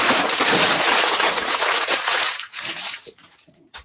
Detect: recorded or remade remade